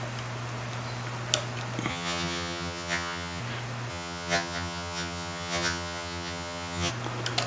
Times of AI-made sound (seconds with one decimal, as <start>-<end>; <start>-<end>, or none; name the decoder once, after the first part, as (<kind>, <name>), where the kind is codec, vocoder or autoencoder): 1.9-3.4 (vocoder, HiFi-GAN); 3.9-6.9

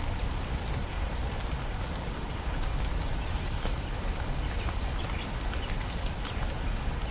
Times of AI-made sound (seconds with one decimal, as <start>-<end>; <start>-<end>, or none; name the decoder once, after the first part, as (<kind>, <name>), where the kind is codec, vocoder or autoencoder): none

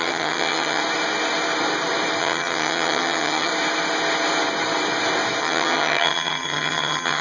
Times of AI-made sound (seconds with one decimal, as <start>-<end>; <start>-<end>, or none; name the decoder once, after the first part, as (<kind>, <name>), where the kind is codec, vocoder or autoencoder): 0.0-0.8 (vocoder, HiFi-GAN); 2.2-3.5; 5.4-7.2

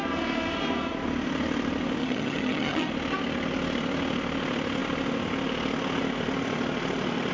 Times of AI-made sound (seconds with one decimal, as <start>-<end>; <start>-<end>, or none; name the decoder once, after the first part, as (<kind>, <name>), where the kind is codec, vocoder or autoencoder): 2.0-2.9 (vocoder, HiFi-GAN)

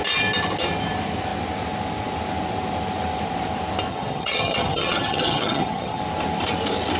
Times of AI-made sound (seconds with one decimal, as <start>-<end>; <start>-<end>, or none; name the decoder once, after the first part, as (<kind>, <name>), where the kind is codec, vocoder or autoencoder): 3.9-6.0 (vocoder, HiFi-GAN)

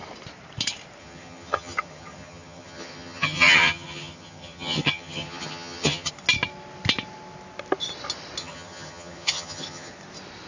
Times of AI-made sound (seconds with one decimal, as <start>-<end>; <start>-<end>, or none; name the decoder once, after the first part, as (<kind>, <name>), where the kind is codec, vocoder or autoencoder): 1.0-6.1 (vocoder, HiFi-GAN); 8.4-9.9

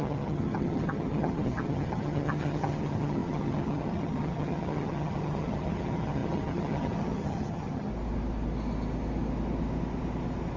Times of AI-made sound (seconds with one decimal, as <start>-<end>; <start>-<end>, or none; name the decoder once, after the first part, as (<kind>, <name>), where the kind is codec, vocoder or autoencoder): 0.0-7.9 (vocoder, HiFi-GAN)

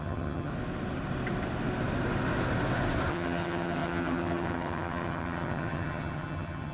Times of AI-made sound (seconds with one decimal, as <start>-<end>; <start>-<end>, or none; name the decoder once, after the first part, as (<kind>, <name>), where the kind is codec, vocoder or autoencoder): 0.0-0.5 (vocoder, HiFi-GAN); 3.1-6.7